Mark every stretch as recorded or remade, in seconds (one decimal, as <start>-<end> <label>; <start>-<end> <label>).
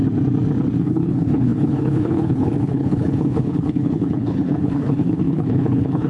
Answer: 0.0-0.8 recorded; 0.8-6.1 remade